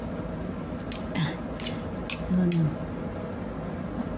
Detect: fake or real real